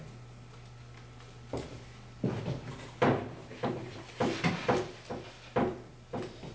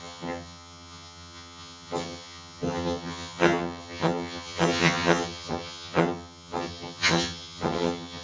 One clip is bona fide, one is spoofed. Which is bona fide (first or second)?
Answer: first